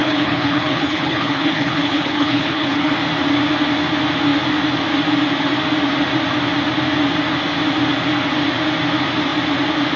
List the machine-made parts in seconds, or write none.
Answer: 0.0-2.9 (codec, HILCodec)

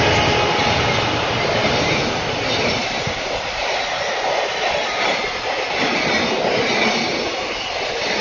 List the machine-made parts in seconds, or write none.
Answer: none

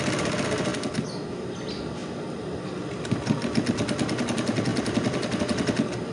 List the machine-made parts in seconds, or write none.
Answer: none

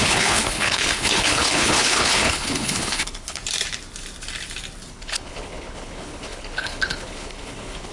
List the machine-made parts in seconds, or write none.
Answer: 0.0-3.4 (codec, HILCodec); 4.9-7.9

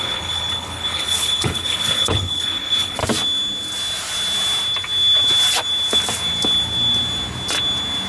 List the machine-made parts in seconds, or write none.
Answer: 0.0-3.0 (codec, HILCodec)